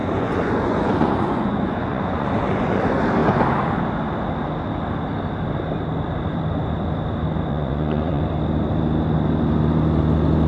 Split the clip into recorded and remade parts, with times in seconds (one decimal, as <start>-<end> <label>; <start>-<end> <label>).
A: 0.0-2.8 remade; 2.8-7.5 recorded; 7.5-8.2 remade; 8.2-10.5 recorded